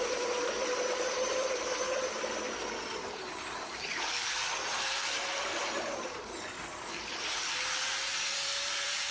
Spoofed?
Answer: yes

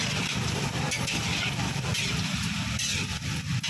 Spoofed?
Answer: yes